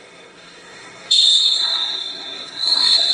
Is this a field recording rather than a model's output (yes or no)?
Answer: no